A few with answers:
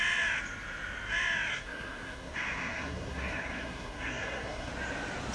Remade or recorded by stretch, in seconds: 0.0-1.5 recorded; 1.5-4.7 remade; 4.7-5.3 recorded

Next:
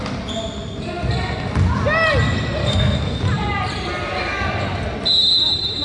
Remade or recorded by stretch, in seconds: 0.0-2.6 recorded; 2.6-3.2 remade; 3.2-5.8 recorded

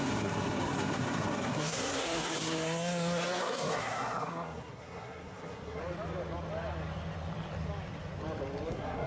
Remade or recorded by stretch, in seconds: 0.0-5.8 remade; 5.8-8.7 recorded; 8.7-9.1 remade

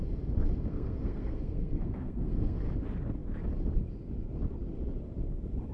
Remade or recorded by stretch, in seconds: 0.0-0.7 recorded; 0.7-2.6 remade; 2.6-5.7 recorded

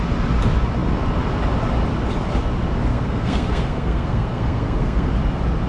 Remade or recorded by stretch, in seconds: 0.0-2.9 recorded; 2.9-5.1 remade; 5.1-5.7 recorded

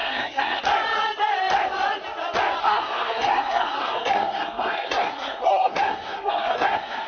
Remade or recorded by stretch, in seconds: 0.0-0.6 remade; 0.6-2.6 recorded; 2.6-7.1 remade

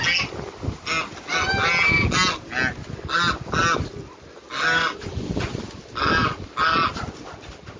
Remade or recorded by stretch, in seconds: 0.0-7.8 recorded

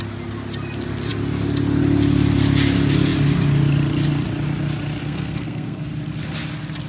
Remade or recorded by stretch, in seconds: 0.0-5.0 recorded; 5.0-5.9 remade; 5.9-6.9 recorded